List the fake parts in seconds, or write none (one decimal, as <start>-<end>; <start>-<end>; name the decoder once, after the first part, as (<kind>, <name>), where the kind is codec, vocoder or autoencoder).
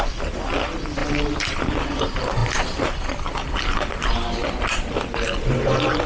1.0-2.0 (vocoder, BigVGAN v2); 2.4-3.6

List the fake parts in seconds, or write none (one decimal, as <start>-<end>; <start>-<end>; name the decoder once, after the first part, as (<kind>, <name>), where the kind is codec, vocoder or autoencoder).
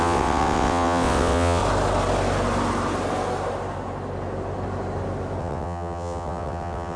0.0-1.6 (vocoder, WaveNeXt); 5.4-7.0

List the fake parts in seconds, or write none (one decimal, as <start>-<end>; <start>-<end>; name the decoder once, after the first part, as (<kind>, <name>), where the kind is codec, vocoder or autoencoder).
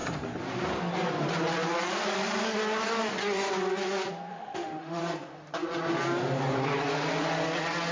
4.3-5.0 (autoencoder, DAC-VAE)